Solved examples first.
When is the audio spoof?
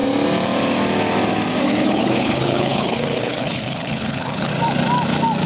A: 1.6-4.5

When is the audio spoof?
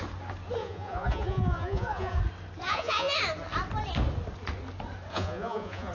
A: 0.6-2.2; 2.6-3.2; 5.1-5.9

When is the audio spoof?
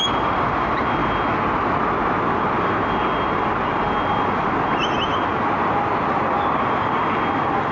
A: none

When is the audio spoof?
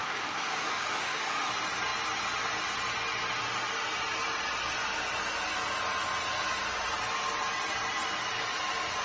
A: 0.0-1.5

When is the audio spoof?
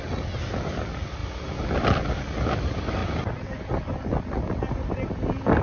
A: none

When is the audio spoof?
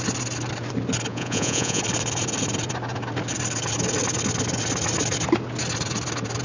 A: 1.1-1.8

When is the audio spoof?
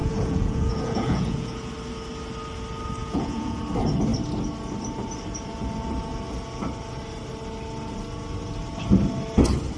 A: 0.0-1.7; 3.0-3.6